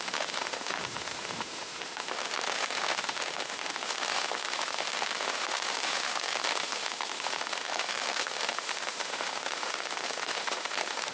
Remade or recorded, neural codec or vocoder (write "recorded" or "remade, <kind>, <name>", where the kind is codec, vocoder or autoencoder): remade, autoencoder, DAC-VAE